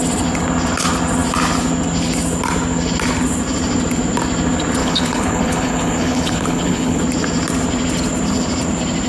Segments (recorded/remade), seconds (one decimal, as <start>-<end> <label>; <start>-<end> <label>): 0.0-4.8 recorded; 4.8-7.0 remade; 7.0-9.1 recorded